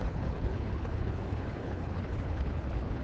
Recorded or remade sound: remade